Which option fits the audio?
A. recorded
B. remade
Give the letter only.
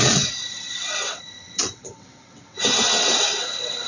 B